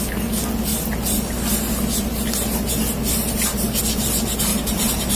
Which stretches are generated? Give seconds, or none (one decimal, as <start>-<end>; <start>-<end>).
4.5-5.2